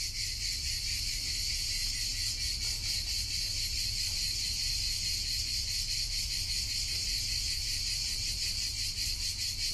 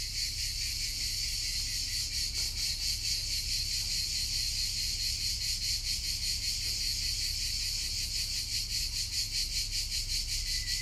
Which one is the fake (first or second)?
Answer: first